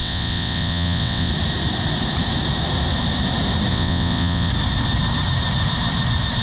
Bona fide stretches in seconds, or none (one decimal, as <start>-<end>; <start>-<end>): 1.3-3.7; 4.5-6.4